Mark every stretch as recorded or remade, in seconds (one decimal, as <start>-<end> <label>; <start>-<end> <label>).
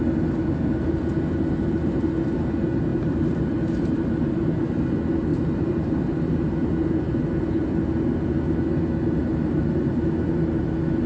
0.0-2.9 recorded; 2.9-4.4 remade; 4.4-5.3 recorded; 5.3-6.5 remade; 6.5-9.2 recorded; 9.2-10.1 remade; 10.1-11.1 recorded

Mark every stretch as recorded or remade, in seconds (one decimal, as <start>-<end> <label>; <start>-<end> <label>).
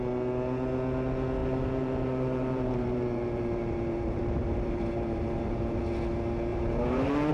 0.0-1.4 recorded; 1.4-5.8 remade; 5.8-6.5 recorded; 6.5-7.3 remade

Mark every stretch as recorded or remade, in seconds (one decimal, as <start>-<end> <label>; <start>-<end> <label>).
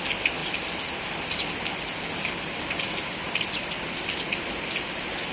0.0-0.4 recorded; 0.4-3.6 remade; 3.6-5.3 recorded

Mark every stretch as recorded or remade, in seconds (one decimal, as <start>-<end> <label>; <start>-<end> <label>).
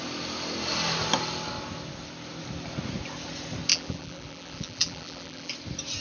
0.0-3.7 recorded; 3.7-5.5 remade; 5.5-6.0 recorded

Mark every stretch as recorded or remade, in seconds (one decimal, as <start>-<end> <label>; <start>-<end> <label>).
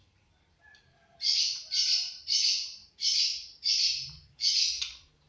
0.0-1.5 remade; 1.5-5.3 recorded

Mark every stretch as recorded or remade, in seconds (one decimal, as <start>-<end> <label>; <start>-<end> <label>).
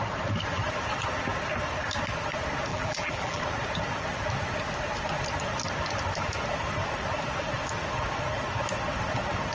0.0-2.7 recorded; 2.7-3.4 remade; 3.4-9.5 recorded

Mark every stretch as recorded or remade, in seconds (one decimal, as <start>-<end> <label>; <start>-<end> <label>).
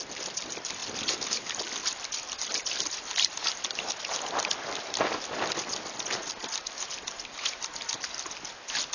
0.0-6.2 remade; 6.2-8.3 recorded; 8.3-8.9 remade